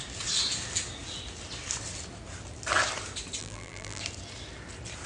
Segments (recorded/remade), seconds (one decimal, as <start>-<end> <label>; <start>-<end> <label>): 0.0-3.4 recorded; 3.4-4.0 remade; 4.0-5.1 recorded